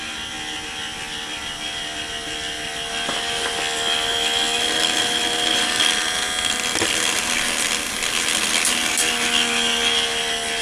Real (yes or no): yes